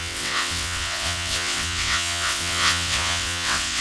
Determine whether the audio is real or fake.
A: fake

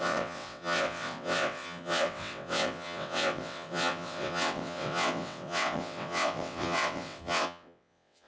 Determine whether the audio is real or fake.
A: fake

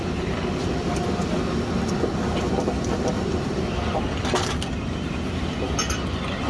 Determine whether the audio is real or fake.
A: real